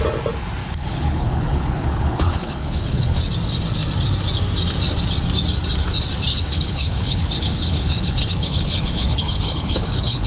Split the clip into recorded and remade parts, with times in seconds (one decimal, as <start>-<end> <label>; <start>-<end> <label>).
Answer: 0.0-0.6 recorded; 0.6-3.2 remade; 3.2-6.3 recorded; 6.3-10.3 remade

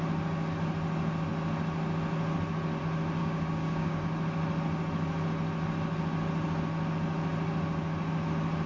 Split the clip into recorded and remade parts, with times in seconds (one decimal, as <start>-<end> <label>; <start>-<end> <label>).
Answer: 0.0-3.2 recorded; 3.2-4.0 remade; 4.0-8.7 recorded

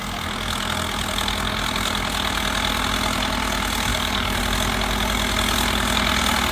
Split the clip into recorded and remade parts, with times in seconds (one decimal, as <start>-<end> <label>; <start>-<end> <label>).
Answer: 0.0-3.9 recorded; 3.9-4.4 remade; 4.4-6.5 recorded

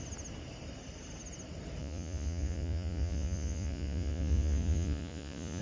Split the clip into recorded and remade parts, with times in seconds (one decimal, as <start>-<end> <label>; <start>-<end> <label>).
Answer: 0.0-1.8 recorded; 1.8-5.6 remade

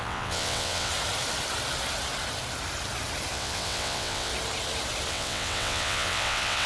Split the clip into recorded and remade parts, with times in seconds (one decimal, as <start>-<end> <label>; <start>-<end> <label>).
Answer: 0.0-0.9 remade; 0.9-3.3 recorded; 3.3-4.3 remade; 4.3-5.1 recorded; 5.1-6.7 remade

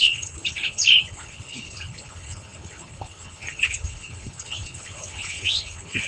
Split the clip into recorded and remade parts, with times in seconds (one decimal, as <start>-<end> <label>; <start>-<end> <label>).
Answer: 0.0-6.1 remade

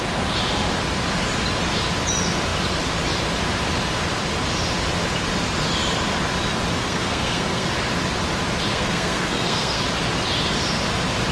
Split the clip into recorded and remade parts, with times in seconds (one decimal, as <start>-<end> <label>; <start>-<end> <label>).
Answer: 0.0-6.8 recorded; 6.8-7.7 remade; 7.7-8.7 recorded; 8.7-9.8 remade; 9.8-11.3 recorded

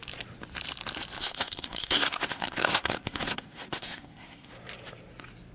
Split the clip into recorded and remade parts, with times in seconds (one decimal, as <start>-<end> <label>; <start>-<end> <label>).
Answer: 0.0-1.2 recorded; 1.2-4.5 remade; 4.5-5.5 recorded